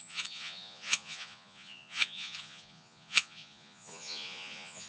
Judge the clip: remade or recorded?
remade